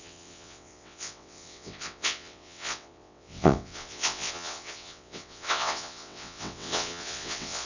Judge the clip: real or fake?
fake